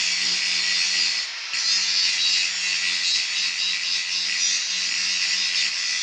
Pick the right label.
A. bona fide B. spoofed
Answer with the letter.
A